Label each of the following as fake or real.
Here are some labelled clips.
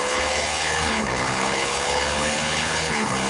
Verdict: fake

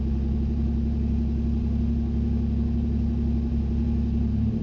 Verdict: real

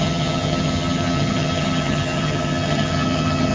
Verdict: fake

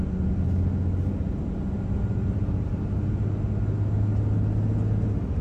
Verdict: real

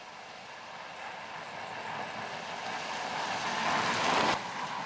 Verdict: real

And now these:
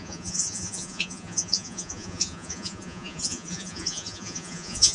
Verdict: fake